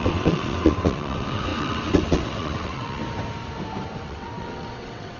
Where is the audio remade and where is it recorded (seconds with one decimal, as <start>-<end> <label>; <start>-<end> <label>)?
0.0-3.0 remade; 3.0-4.0 recorded; 4.0-5.2 remade